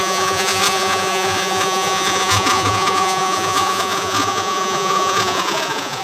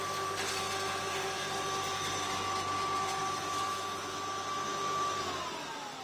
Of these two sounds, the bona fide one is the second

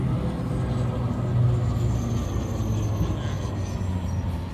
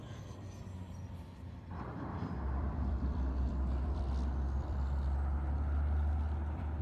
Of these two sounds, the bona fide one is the first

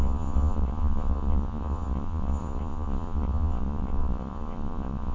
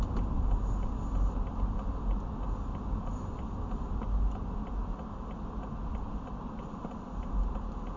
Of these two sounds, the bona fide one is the second